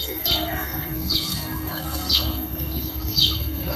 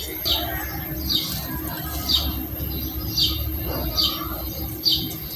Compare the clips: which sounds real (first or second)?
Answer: second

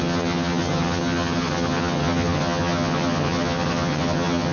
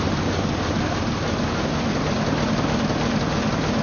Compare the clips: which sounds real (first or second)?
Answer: second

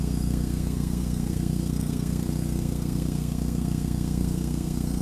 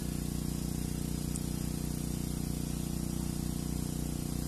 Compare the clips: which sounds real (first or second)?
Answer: second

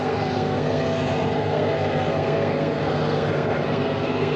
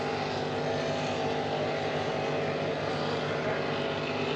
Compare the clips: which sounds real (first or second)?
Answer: second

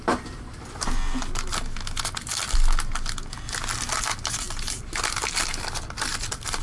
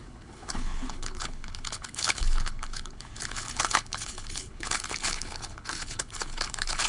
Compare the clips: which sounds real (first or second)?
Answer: first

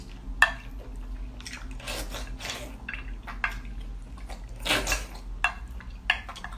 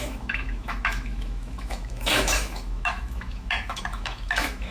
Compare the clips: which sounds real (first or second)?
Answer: first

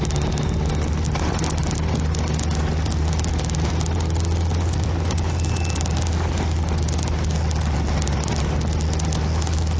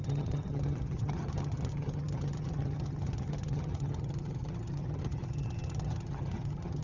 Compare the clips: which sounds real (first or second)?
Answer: first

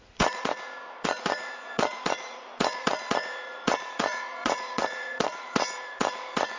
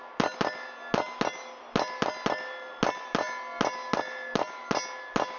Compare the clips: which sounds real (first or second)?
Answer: second